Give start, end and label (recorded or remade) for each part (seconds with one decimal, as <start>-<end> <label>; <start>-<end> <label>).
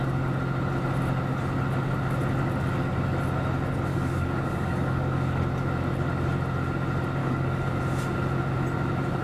0.0-3.9 recorded; 3.9-5.4 remade; 5.4-7.2 recorded; 7.2-7.8 remade; 7.8-9.2 recorded